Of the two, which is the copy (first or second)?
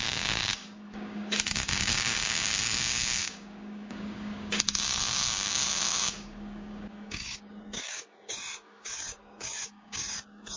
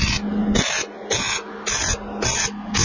first